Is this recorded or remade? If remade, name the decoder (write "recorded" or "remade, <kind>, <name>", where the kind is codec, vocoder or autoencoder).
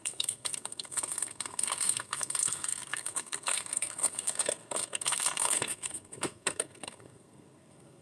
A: remade, codec, SNAC